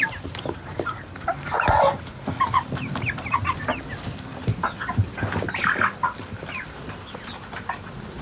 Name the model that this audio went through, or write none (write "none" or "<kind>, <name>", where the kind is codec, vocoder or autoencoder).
vocoder, BigVGAN v2